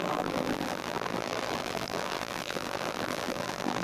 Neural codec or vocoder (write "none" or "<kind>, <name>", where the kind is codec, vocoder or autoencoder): vocoder, BigVGAN v2